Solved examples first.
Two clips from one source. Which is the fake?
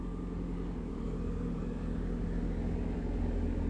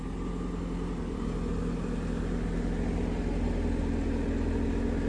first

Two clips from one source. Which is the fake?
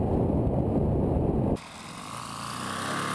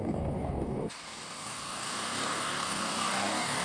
second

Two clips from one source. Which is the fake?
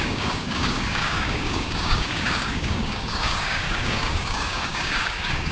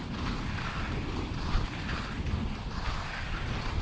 first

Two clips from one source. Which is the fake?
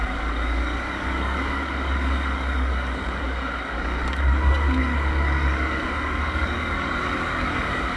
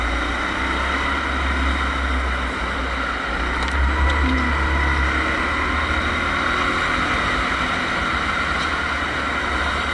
first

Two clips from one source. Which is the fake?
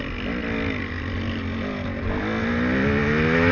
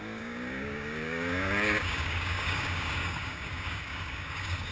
second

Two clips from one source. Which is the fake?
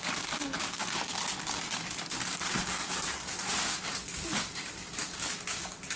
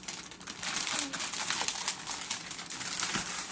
first